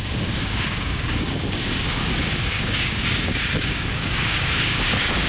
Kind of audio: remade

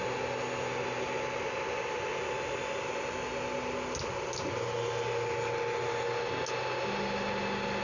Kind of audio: recorded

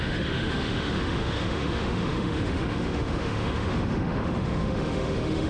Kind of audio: remade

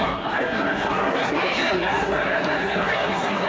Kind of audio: remade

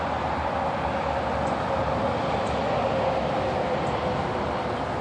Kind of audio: recorded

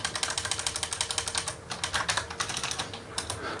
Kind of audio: recorded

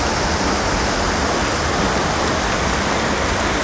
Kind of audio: recorded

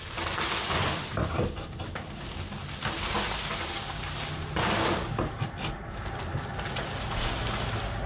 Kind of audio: recorded